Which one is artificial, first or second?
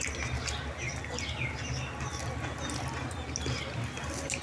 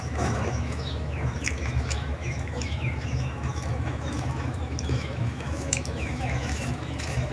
second